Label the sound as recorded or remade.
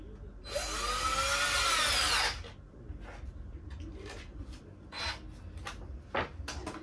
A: recorded